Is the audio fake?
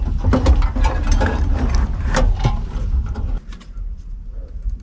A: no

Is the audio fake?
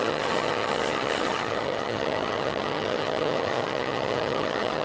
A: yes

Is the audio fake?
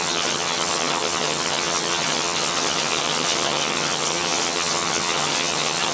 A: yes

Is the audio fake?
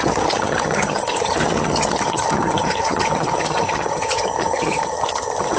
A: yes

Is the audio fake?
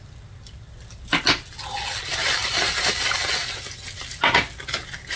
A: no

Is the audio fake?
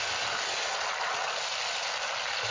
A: no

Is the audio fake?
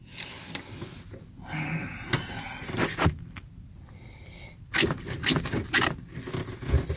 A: no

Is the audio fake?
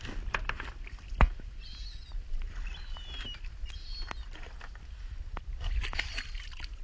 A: no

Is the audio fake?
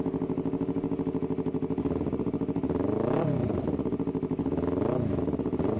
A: no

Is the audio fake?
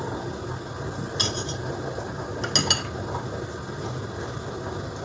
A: no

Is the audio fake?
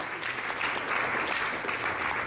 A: no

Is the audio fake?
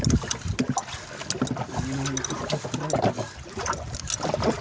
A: no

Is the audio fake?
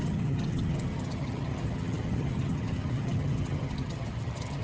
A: yes